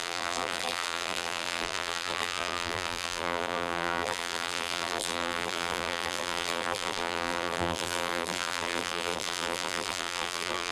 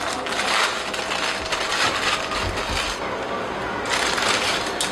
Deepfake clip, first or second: first